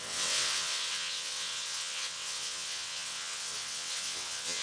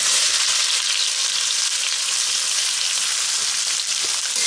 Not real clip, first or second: first